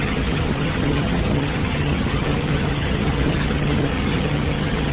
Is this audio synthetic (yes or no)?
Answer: yes